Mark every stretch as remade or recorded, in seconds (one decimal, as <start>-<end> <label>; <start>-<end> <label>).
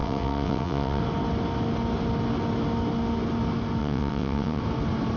0.0-1.0 remade; 1.0-3.8 recorded; 3.8-4.6 remade; 4.6-5.2 recorded